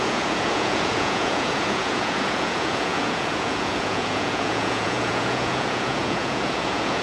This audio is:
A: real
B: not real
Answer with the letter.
B